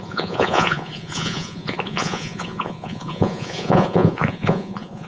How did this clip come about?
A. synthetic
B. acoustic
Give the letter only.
A